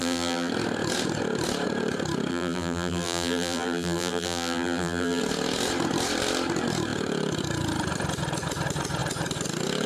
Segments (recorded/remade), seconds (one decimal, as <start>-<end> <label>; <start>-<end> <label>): 0.0-0.5 remade; 0.5-2.3 recorded; 2.3-5.2 remade; 5.2-9.9 recorded